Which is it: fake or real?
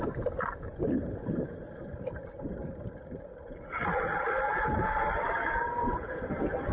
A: real